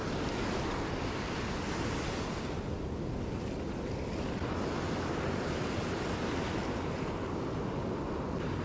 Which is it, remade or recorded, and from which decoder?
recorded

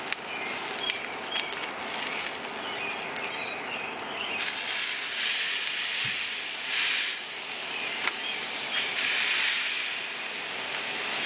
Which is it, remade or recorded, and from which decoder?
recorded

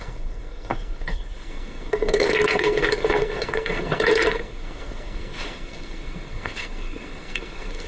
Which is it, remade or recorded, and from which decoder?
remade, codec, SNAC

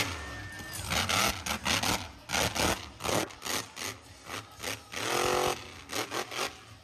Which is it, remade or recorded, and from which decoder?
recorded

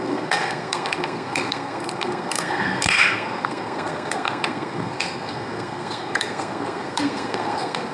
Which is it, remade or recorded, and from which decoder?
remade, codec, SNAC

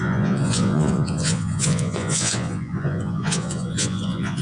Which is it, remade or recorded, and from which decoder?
remade, vocoder, Vocos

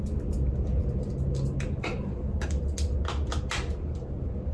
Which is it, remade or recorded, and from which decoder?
recorded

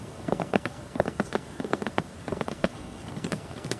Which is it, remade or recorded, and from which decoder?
remade, codec, SNAC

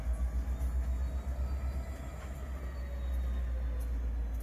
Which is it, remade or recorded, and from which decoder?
recorded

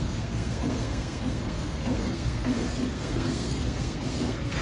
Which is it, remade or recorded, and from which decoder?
remade, codec, SNAC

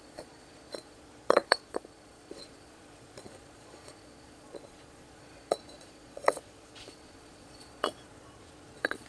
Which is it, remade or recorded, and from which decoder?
remade, vocoder, Vocos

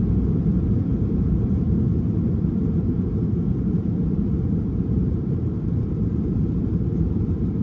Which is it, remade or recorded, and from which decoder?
remade, vocoder, BigVGAN v2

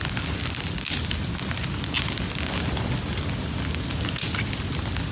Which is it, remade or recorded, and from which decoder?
recorded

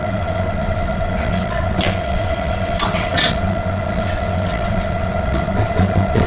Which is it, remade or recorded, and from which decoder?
remade, vocoder, WaveNeXt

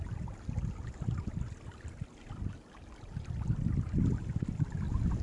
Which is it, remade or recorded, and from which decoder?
recorded